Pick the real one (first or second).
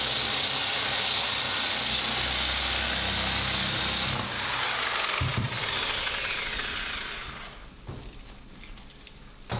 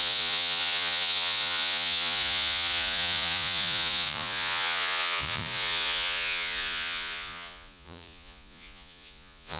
first